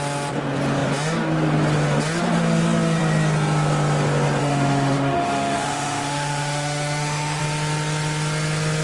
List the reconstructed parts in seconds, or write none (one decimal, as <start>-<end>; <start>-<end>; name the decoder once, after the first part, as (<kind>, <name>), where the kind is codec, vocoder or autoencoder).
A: 4.4-7.4 (autoencoder, DAC-VAE)